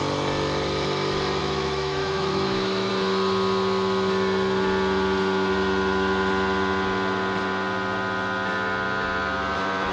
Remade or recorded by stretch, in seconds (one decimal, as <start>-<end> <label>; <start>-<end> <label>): 0.0-1.4 recorded; 1.4-2.9 remade; 2.9-9.9 recorded